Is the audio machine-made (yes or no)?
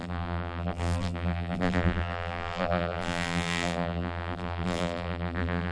yes